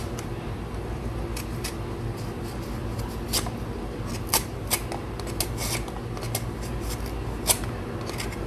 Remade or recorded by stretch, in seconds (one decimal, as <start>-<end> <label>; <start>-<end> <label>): 0.0-8.5 recorded